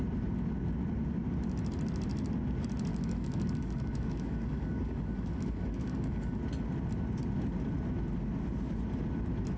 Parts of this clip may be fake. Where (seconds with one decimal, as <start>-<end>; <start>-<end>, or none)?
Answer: 2.9-6.4